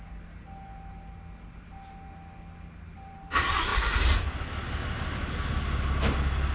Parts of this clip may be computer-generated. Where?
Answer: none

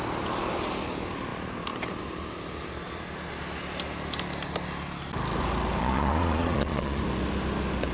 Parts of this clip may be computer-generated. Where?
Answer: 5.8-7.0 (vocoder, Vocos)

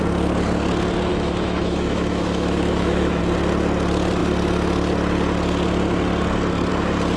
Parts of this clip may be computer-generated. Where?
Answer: 1.1-3.2 (autoencoder, DAC-VAE)

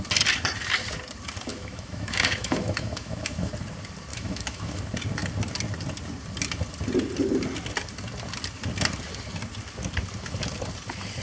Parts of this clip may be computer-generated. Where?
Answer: 1.5-3.5 (autoencoder, DAC-VAE); 4.1-4.8

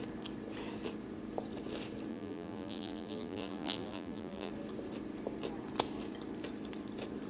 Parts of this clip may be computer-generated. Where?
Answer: 2.1-4.5 (vocoder, BigVGAN v2)

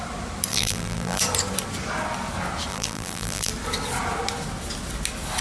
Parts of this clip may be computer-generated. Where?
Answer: 0.5-1.2 (vocoder, BigVGAN v2); 2.7-3.5

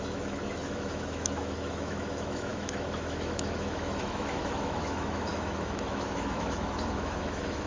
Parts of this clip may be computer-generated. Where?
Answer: 0.0-7.7 (autoencoder, DAC-VAE)

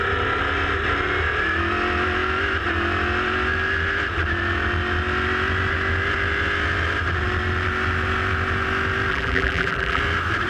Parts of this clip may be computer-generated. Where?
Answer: 9.1-10.0 (vocoder, BigVGAN v2)